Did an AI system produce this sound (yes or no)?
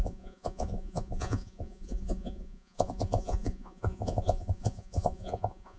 yes